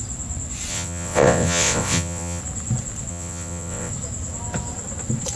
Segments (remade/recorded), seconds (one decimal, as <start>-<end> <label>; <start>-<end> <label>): 0.0-0.7 recorded; 0.7-2.4 remade; 2.4-3.1 recorded; 3.1-3.9 remade; 3.9-5.4 recorded